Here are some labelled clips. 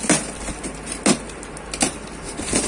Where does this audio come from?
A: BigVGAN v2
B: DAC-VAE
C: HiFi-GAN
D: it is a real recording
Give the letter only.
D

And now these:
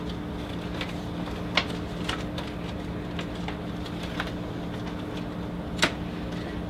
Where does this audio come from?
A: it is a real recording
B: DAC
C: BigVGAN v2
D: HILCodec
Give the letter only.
A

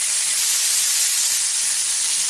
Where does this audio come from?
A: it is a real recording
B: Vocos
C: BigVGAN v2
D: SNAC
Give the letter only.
A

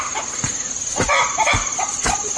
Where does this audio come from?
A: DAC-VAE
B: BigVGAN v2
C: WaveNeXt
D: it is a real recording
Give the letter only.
B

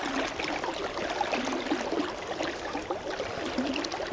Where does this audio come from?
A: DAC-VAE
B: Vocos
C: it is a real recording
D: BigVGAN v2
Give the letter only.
C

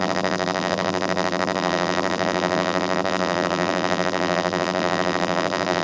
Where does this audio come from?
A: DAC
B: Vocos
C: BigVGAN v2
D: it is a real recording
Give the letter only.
C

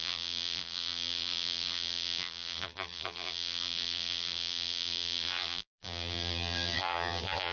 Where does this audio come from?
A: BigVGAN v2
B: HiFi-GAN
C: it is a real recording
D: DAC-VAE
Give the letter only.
A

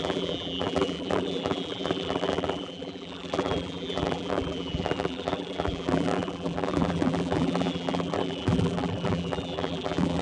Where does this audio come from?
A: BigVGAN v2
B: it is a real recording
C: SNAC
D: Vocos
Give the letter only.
A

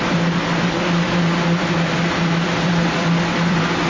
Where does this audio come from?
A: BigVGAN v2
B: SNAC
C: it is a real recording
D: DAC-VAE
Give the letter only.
A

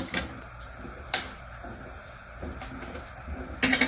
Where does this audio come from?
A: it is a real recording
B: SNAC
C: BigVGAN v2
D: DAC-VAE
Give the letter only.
A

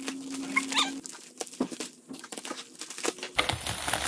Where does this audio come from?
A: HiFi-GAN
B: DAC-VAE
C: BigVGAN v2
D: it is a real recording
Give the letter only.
D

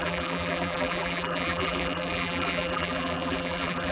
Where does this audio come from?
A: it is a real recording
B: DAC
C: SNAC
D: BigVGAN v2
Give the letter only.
D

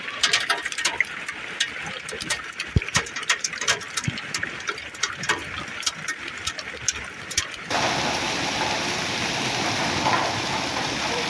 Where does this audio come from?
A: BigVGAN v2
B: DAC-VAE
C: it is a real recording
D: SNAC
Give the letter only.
A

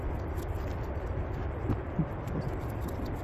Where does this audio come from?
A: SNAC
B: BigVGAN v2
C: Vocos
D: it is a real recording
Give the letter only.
D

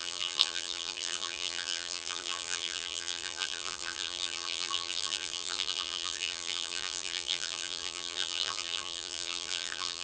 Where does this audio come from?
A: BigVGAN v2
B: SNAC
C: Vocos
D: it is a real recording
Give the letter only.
A